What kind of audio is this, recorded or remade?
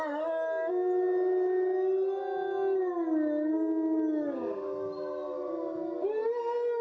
recorded